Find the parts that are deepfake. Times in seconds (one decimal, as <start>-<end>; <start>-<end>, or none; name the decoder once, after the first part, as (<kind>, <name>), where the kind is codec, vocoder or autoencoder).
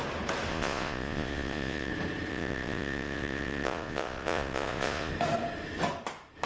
0.5-1.9 (vocoder, Vocos); 2.3-5.1